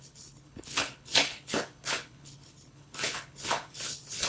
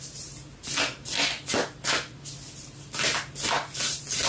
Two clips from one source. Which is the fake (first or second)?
first